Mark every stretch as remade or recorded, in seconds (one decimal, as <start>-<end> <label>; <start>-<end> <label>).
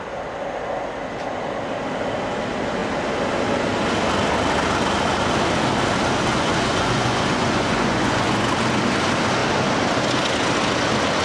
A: 0.0-6.3 recorded; 6.3-8.5 remade; 8.5-11.2 recorded